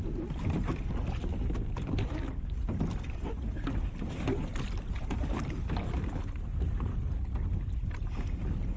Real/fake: real